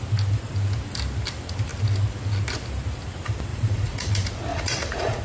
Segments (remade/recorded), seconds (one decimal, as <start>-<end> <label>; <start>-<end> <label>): 0.0-3.5 recorded; 3.5-4.1 remade; 4.1-4.5 recorded; 4.5-5.2 remade